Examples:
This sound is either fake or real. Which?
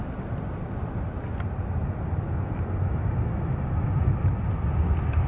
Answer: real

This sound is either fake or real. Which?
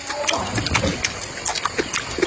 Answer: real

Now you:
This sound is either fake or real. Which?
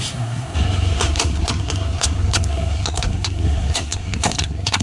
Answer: fake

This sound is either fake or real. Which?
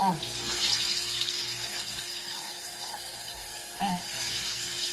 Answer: fake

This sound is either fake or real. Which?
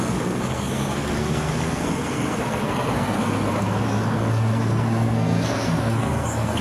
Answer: fake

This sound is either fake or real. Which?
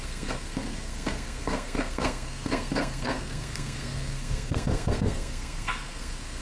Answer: fake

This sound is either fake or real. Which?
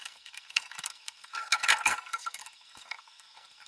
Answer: fake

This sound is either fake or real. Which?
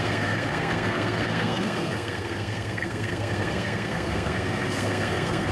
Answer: fake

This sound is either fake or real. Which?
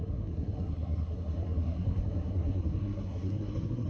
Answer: fake